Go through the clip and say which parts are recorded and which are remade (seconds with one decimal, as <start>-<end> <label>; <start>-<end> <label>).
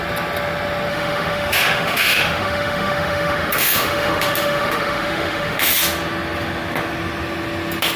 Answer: 0.0-0.9 recorded; 0.9-5.7 remade; 5.7-8.0 recorded